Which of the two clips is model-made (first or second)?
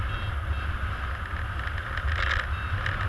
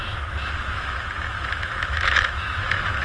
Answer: second